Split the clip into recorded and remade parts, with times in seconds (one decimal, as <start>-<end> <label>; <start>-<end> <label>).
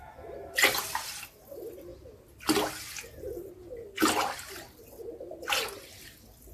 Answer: 0.0-6.5 recorded